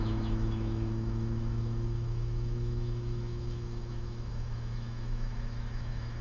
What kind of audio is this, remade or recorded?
remade